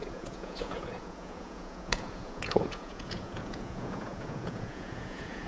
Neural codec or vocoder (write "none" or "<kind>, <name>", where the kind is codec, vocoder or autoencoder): vocoder, Vocos